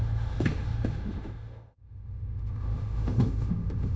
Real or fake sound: fake